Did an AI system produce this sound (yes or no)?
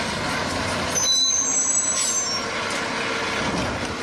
no